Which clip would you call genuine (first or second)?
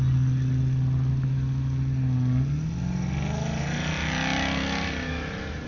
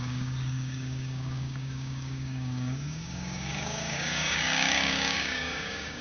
first